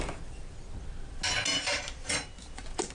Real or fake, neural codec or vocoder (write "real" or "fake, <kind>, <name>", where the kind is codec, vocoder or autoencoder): real